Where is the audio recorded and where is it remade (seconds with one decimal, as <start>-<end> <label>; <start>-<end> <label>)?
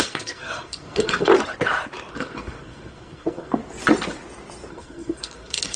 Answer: 0.0-1.3 remade; 1.3-2.1 recorded; 2.1-3.6 remade; 3.6-4.7 recorded; 4.7-5.8 remade